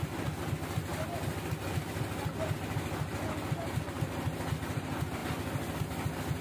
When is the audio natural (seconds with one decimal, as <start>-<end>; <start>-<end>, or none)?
0.0-6.4